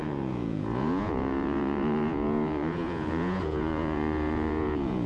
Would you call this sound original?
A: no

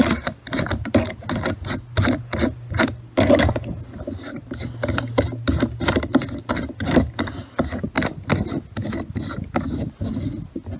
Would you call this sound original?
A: yes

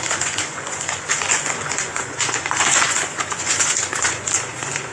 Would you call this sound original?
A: no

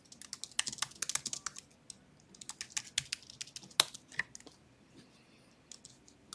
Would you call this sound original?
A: yes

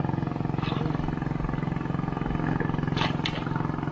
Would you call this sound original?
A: yes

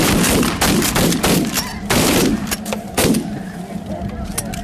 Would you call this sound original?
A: yes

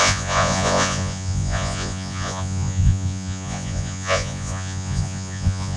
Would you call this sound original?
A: no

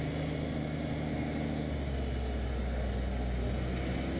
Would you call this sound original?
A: yes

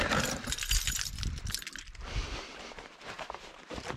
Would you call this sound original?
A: yes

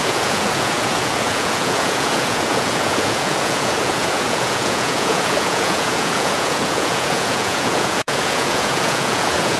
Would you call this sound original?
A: no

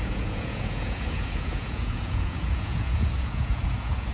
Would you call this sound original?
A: no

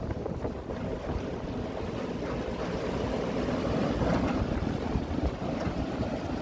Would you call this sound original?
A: yes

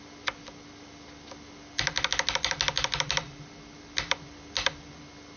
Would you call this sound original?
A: yes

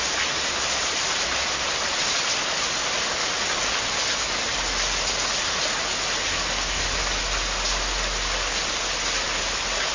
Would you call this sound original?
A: yes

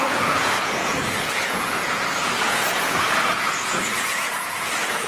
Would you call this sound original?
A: no